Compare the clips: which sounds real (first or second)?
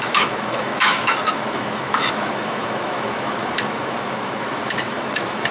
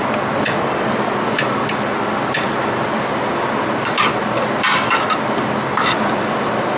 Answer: second